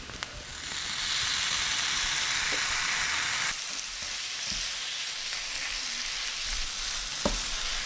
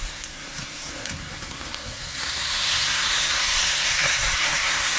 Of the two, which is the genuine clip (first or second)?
first